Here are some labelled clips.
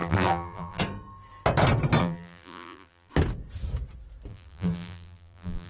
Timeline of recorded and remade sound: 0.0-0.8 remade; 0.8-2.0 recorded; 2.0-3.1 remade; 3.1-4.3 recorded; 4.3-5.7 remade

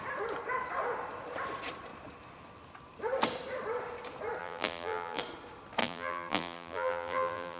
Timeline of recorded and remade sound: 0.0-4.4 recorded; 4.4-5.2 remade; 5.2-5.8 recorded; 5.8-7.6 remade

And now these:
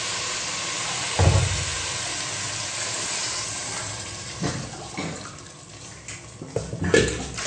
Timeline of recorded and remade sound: 0.0-7.5 recorded

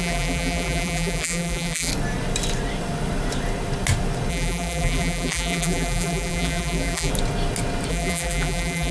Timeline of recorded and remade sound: 0.0-1.9 remade; 1.9-4.3 recorded; 4.3-7.1 remade; 7.1-7.9 recorded; 7.9-8.9 remade

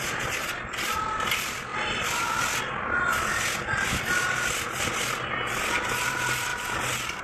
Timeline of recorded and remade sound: 0.0-1.7 recorded; 1.7-2.6 remade; 2.6-6.5 recorded; 6.5-7.2 remade

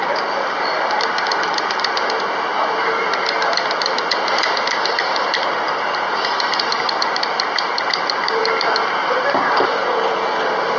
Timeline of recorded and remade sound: 0.0-9.8 remade; 9.8-10.4 recorded; 10.4-10.8 remade